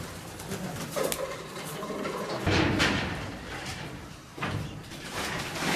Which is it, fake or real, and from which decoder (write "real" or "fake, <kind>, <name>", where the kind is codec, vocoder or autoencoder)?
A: real